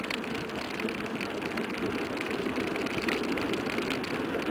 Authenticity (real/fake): real